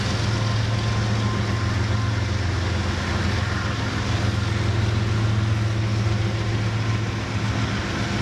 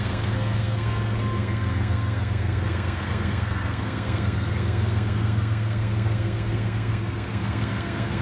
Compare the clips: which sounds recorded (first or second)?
first